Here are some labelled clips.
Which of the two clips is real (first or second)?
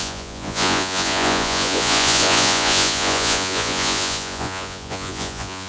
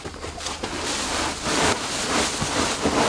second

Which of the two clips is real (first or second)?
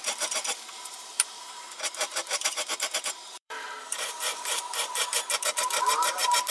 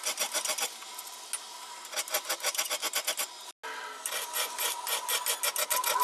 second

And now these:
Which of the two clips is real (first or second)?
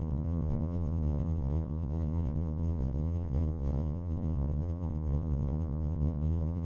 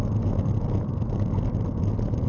second